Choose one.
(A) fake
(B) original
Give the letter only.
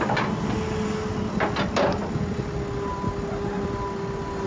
B